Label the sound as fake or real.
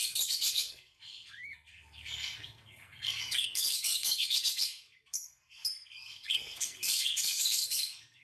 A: fake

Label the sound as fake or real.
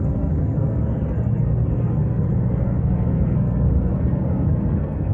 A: fake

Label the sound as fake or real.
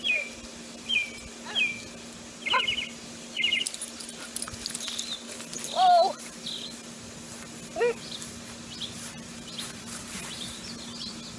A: real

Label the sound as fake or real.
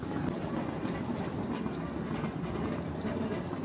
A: real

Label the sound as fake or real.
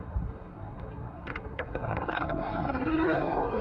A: fake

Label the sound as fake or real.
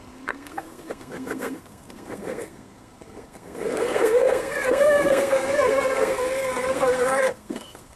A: fake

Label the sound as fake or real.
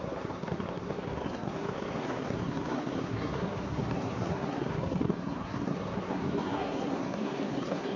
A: fake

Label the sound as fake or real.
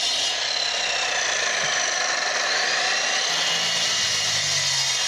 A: real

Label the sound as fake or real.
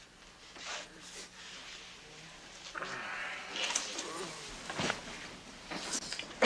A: real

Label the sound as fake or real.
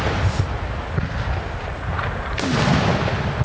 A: real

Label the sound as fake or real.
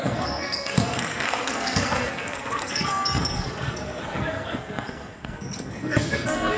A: fake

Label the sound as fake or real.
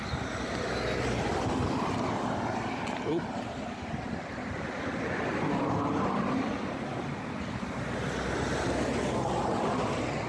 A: real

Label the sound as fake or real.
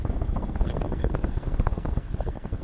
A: fake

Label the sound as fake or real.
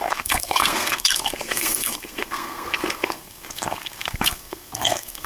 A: fake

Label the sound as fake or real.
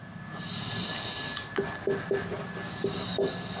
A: real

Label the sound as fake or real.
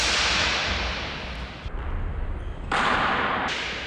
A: real